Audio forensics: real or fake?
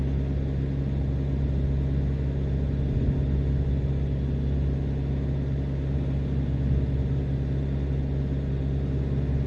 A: real